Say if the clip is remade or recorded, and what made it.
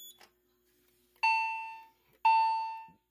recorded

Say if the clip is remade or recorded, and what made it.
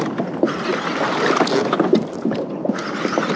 recorded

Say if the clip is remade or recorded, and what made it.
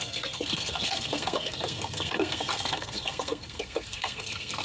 remade, codec, SNAC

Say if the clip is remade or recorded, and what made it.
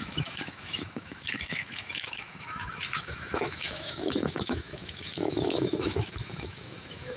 remade, autoencoder, DAC-VAE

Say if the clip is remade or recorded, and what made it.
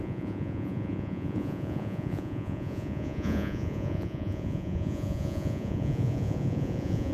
remade, vocoder, Vocos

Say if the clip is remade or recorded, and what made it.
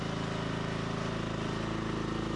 recorded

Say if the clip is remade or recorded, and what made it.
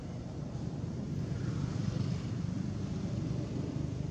recorded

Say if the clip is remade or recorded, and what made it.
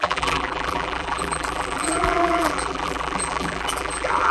remade, vocoder, BigVGAN v2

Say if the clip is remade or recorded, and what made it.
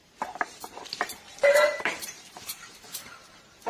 remade, vocoder, BigVGAN v2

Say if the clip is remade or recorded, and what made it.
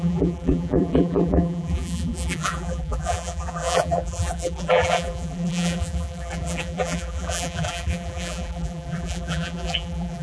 remade, vocoder, BigVGAN v2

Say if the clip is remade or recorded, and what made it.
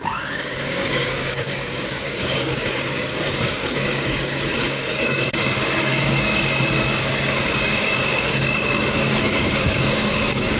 remade, codec, DAC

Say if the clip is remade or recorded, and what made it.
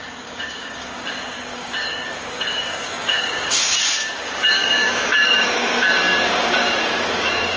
remade, codec, DAC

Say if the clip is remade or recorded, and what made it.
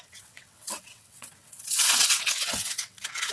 remade, vocoder, WaveNeXt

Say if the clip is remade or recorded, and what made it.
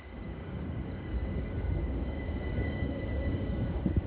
remade, codec, DAC